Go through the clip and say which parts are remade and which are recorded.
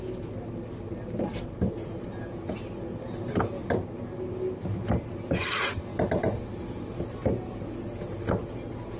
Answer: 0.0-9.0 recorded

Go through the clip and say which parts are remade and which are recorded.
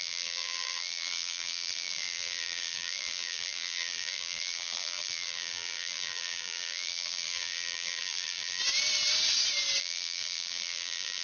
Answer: 0.0-8.6 remade; 8.6-9.8 recorded; 9.8-11.2 remade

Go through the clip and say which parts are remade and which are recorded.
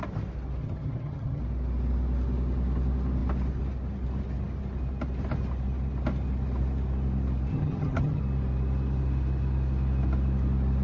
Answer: 0.0-0.6 recorded; 0.6-1.4 remade; 1.4-7.5 recorded; 7.5-8.2 remade; 8.2-10.8 recorded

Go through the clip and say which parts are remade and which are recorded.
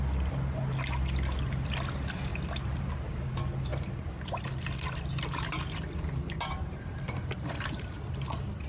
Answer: 0.0-8.7 recorded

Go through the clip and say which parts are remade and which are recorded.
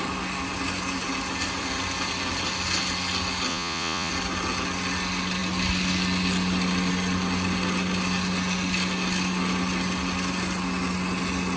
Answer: 0.0-3.5 recorded; 3.5-4.1 remade; 4.1-11.6 recorded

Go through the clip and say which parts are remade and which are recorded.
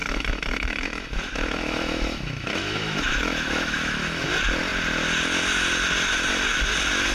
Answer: 0.0-4.3 remade; 4.3-7.1 recorded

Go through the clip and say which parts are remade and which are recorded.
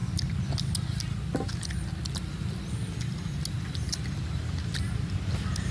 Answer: 0.0-5.7 recorded